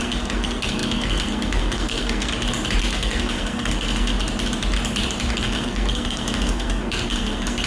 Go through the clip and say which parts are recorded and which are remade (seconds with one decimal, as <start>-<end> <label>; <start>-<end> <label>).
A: 0.0-2.3 remade; 2.3-2.8 recorded; 2.8-4.1 remade; 4.1-5.3 recorded; 5.3-7.7 remade